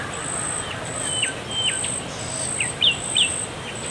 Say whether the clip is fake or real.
real